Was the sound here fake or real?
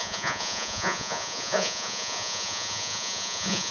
fake